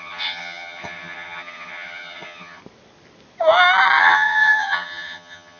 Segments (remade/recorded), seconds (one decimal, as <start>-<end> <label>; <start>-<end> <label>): 0.0-2.6 remade; 2.6-4.0 recorded; 4.0-5.6 remade